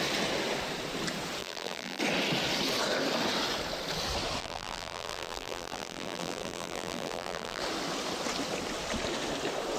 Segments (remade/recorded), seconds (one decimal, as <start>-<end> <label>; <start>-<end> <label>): 0.0-1.4 recorded; 1.4-2.0 remade; 2.0-4.4 recorded; 4.4-7.6 remade; 7.6-9.8 recorded